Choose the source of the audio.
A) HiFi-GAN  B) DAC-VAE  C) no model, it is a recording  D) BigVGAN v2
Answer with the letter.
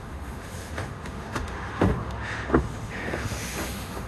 B